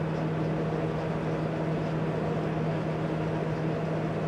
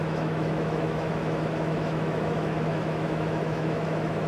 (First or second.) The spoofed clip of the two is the second